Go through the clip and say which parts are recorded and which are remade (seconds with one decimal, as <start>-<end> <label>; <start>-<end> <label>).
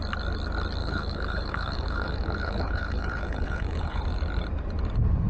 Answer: 0.0-0.8 recorded; 0.8-4.0 remade; 4.0-5.3 recorded